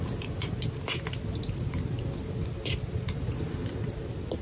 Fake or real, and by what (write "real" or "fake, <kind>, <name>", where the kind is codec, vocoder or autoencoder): real